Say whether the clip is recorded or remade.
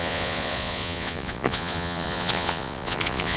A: remade